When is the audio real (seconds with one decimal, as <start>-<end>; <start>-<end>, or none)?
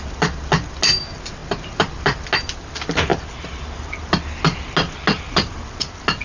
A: 0.0-6.2